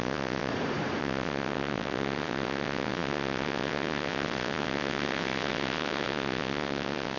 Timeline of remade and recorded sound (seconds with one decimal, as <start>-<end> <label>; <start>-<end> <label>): 0.0-0.5 remade; 0.5-1.0 recorded; 1.0-7.2 remade